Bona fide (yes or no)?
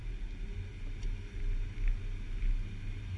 yes